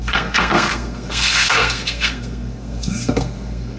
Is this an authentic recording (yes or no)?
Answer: no